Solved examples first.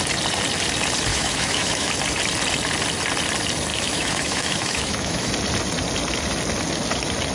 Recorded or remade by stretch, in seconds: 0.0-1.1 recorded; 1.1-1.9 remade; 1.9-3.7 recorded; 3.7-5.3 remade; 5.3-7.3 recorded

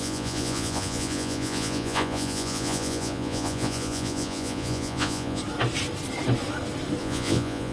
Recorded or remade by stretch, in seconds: 0.0-5.4 remade; 5.4-7.0 recorded; 7.0-7.7 remade

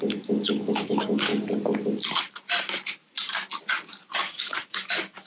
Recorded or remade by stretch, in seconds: 0.0-1.3 remade; 1.3-4.2 recorded; 4.2-5.3 remade